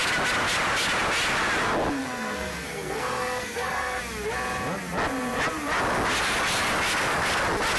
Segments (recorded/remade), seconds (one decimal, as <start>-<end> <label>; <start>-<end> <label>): 0.0-2.0 recorded; 2.0-4.0 remade; 4.0-7.8 recorded